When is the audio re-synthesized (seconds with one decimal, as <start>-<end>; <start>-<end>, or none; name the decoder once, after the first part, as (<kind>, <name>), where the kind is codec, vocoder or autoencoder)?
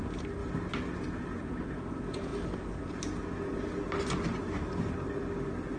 none